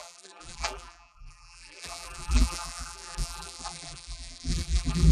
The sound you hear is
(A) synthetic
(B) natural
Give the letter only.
A